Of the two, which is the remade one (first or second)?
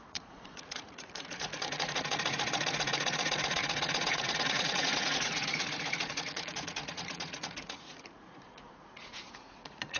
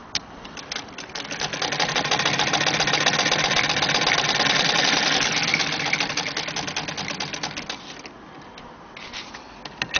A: first